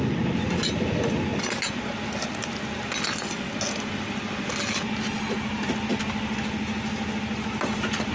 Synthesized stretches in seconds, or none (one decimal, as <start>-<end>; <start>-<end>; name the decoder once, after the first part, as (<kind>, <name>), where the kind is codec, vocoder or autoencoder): none

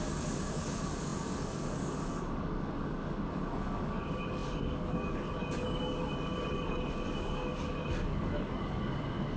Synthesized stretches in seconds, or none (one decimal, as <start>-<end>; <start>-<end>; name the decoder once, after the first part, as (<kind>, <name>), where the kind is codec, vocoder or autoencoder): 0.0-9.4 (codec, DAC)

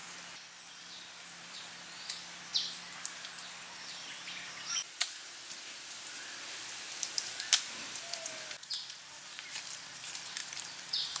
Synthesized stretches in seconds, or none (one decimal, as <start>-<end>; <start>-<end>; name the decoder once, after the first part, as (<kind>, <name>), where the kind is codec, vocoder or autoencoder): none